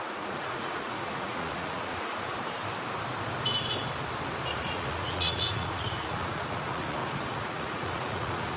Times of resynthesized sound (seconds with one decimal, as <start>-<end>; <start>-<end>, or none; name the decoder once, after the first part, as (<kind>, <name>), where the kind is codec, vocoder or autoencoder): 0.0-2.3 (vocoder, Vocos); 4.5-8.6